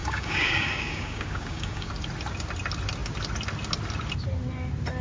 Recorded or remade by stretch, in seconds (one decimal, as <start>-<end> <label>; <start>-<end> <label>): 0.0-1.9 remade; 1.9-5.0 recorded

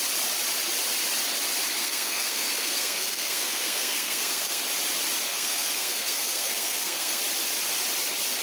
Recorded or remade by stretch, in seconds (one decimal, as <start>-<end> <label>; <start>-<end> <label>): 0.0-1.8 recorded; 1.8-4.6 remade; 4.6-5.3 recorded; 5.3-7.2 remade; 7.2-8.4 recorded